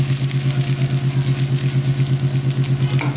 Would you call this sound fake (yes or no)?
no